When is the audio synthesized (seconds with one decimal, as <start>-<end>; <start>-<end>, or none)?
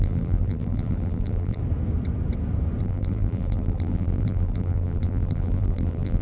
0.0-1.6; 2.8-6.2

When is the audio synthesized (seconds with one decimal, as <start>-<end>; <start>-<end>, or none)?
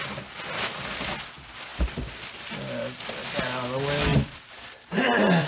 1.7-2.5; 4.1-5.5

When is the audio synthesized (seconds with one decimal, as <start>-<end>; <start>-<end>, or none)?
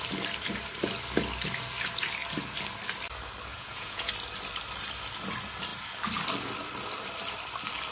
3.5-4.1